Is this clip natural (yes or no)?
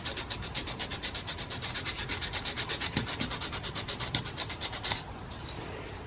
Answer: yes